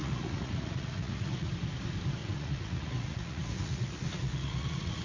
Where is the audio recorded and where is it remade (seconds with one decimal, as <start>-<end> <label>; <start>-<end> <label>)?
0.0-1.5 remade; 1.5-2.2 recorded; 2.2-5.0 remade